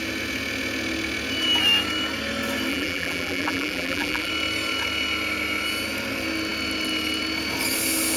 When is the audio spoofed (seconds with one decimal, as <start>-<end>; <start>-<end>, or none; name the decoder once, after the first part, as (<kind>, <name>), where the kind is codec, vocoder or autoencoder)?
2.7-4.3 (vocoder, BigVGAN v2)